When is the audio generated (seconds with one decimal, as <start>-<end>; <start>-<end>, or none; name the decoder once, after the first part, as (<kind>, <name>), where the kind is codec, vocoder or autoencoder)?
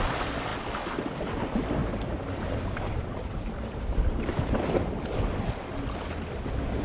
1.8-5.2 (vocoder, BigVGAN v2)